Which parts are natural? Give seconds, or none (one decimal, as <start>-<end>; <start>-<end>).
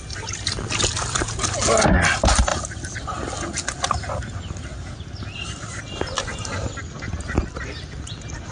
0.0-2.5; 3.8-8.5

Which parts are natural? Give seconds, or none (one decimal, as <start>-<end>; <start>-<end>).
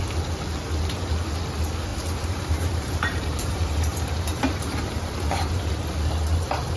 0.0-1.9; 5.7-6.8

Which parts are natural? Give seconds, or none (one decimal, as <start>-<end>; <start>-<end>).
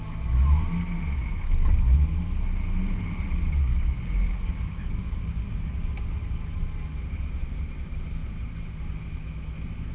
0.0-3.4; 5.7-9.9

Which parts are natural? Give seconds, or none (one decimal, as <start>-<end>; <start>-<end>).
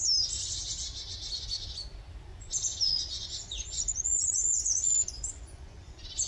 0.0-2.3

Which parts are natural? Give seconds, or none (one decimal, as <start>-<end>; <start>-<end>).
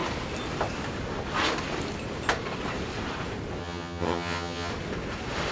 0.0-3.6; 4.7-5.5